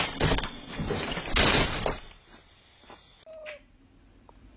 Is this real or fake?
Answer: real